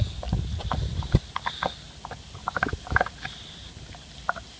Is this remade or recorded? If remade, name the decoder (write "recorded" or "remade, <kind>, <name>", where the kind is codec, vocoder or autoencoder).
recorded